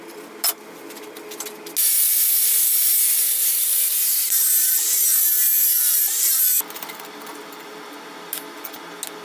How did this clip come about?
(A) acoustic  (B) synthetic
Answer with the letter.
A